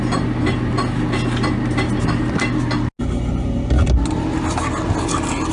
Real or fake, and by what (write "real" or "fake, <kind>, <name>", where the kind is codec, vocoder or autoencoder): real